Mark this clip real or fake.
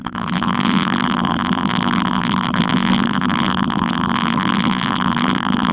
fake